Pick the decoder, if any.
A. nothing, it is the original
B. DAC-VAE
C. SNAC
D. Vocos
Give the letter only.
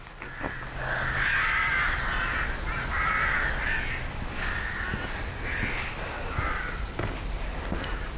A